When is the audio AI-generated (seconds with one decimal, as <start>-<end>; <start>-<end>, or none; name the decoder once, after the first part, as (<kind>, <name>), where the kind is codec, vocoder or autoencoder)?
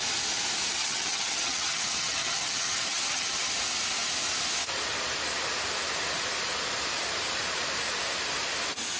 0.8-3.5 (vocoder, HiFi-GAN)